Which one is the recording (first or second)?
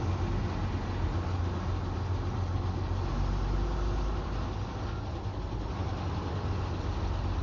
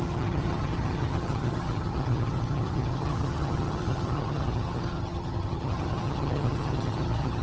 first